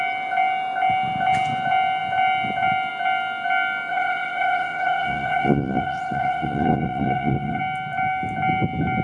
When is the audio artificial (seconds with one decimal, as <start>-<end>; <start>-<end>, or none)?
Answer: 3.9-7.6